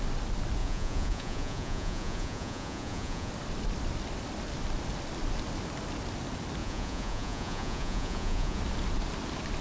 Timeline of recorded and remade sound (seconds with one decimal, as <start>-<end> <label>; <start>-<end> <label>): 0.0-0.6 recorded; 0.6-3.3 remade; 3.3-6.6 recorded; 6.6-8.6 remade; 8.6-9.6 recorded